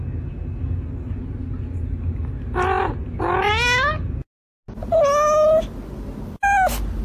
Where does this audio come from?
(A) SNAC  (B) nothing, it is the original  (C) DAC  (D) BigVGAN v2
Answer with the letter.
B